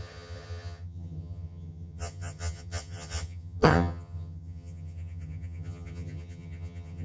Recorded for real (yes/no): no